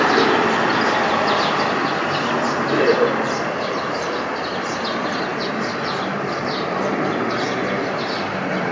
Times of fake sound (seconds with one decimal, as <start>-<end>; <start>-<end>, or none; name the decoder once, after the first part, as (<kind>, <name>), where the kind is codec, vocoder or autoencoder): none